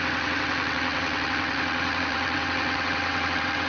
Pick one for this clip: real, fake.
fake